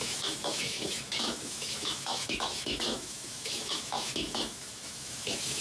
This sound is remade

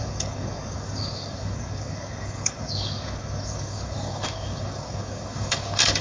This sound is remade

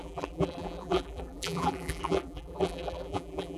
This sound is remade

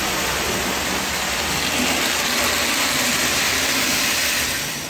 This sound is recorded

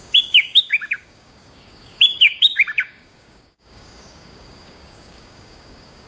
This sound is remade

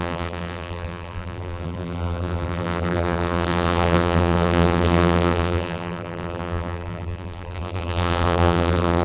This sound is remade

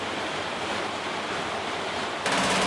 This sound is recorded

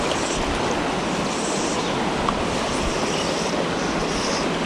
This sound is recorded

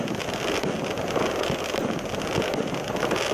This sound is recorded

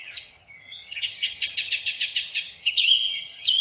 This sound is remade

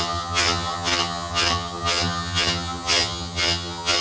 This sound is remade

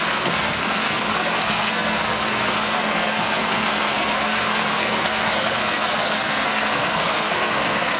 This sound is remade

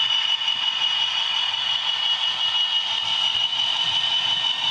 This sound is recorded